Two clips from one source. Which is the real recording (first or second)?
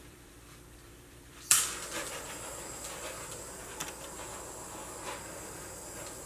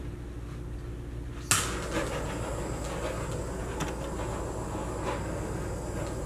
second